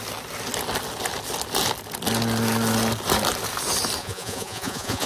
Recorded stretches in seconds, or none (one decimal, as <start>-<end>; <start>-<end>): 0.0-4.0